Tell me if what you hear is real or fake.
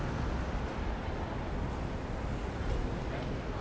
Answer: real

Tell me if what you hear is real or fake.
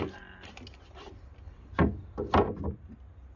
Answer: real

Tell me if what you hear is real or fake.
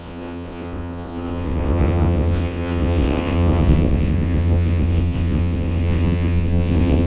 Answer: fake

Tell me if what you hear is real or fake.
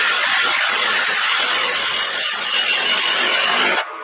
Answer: real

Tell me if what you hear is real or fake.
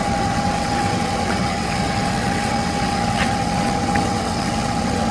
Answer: fake